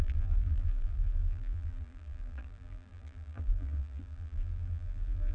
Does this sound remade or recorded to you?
remade